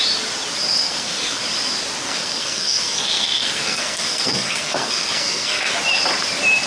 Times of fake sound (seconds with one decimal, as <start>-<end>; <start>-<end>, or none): 0.8-1.4; 2.0-5.7